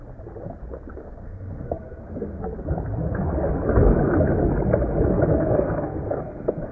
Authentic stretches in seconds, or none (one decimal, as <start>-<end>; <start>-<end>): 0.0-1.0; 2.4-5.3